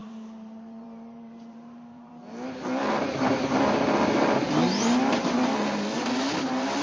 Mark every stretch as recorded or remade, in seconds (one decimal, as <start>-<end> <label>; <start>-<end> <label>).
0.0-2.1 remade; 2.1-2.8 recorded; 2.8-3.6 remade; 3.6-6.8 recorded